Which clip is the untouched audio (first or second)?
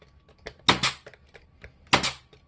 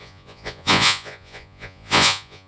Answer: first